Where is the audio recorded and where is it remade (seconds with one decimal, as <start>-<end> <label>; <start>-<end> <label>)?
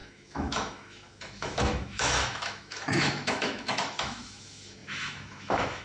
0.0-5.8 remade